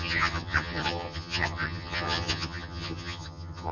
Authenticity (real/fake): fake